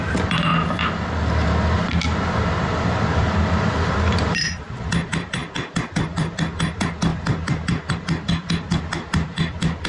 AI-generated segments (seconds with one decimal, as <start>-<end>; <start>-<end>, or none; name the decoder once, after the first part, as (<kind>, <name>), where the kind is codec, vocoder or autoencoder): 0.0-0.5 (vocoder, BigVGAN v2); 2.5-5.4; 5.9-9.9